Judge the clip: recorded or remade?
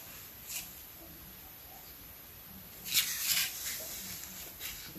recorded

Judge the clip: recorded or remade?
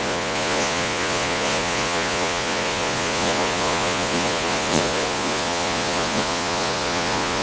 remade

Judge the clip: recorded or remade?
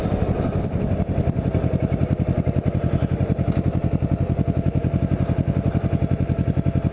recorded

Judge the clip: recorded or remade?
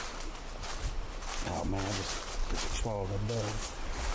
recorded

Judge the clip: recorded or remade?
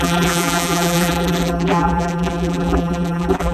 remade